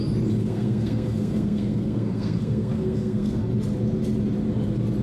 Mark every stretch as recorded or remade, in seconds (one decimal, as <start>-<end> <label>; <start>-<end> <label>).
0.0-0.4 recorded; 0.4-3.4 remade; 3.4-5.0 recorded